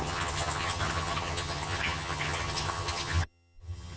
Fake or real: fake